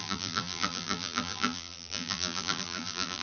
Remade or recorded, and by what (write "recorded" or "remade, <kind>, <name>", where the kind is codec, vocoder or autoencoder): remade, vocoder, BigVGAN v2